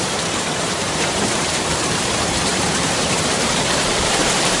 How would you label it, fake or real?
fake